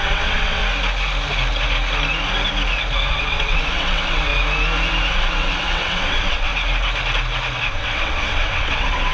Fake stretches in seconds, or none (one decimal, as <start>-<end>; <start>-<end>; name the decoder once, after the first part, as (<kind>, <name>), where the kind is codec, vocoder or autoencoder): 0.0-0.6 (vocoder, WaveNeXt); 3.1-4.3; 5.1-6.5; 7.7-9.1